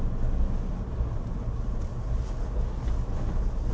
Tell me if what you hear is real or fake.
real